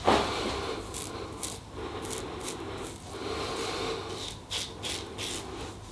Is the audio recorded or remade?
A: recorded